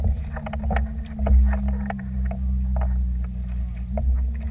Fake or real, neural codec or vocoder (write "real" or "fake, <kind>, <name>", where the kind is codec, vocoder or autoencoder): real